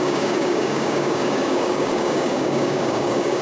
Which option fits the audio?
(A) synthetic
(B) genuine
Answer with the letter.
A